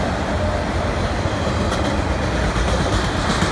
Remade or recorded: recorded